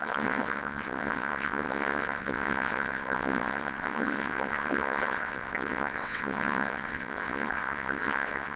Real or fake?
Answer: fake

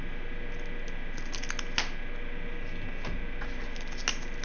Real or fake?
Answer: real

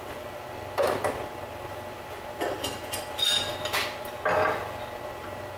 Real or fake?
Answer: real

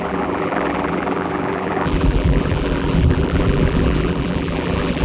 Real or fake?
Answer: fake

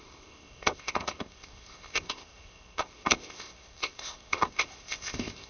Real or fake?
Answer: fake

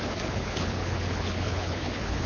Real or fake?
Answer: fake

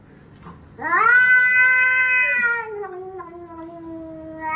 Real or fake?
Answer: real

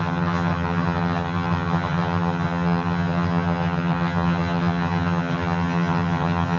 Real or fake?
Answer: fake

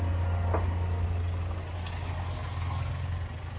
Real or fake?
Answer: real